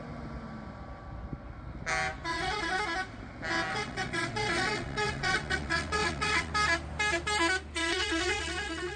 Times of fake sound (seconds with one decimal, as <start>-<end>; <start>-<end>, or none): 2.3-2.8; 3.7-6.5; 7.8-9.0